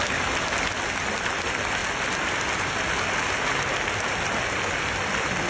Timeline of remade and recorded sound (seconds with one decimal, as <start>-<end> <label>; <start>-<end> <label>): 0.0-5.5 recorded